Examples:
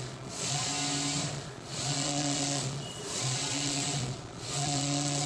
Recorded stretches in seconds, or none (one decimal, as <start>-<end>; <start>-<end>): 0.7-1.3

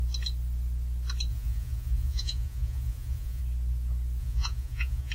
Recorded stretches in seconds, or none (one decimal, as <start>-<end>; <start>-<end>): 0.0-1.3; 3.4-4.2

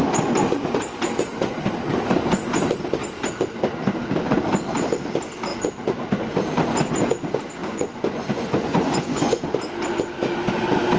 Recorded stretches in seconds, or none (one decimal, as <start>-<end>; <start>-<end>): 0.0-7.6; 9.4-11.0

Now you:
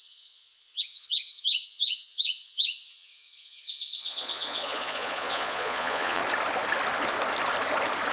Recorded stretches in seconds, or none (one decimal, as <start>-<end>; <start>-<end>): 6.2-8.1